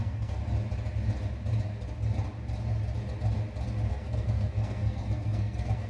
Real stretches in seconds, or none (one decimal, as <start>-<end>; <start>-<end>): 0.4-3.9